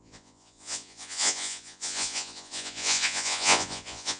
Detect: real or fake fake